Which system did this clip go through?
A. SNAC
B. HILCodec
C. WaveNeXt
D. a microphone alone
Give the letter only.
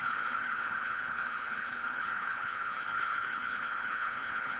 B